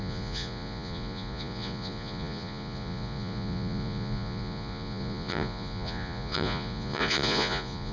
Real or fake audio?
fake